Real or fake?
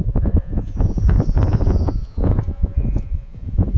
fake